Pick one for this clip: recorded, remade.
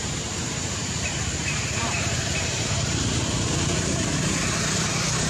remade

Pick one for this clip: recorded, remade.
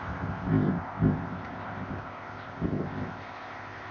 remade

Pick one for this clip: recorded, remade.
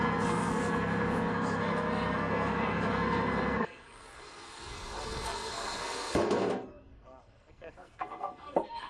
remade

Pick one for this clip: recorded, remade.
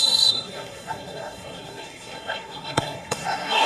remade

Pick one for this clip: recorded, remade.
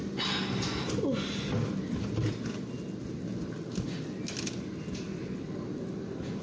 recorded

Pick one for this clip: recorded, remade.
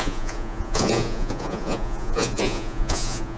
remade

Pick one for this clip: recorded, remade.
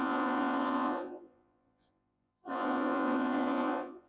remade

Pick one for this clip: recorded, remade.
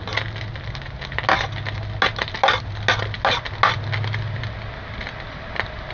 recorded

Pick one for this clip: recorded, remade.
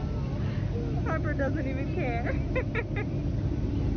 recorded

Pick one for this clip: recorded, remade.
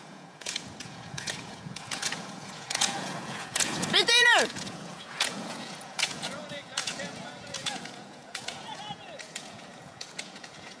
remade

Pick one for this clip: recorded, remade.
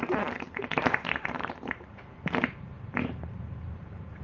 remade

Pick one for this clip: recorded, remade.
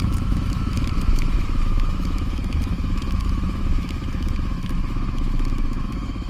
remade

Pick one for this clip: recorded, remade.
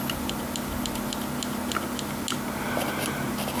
recorded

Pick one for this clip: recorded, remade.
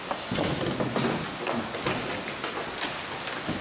recorded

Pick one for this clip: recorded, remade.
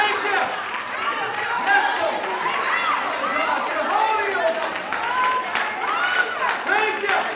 recorded